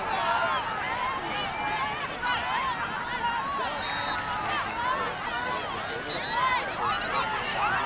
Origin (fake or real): real